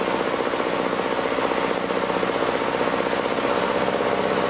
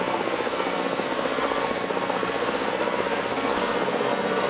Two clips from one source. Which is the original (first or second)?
first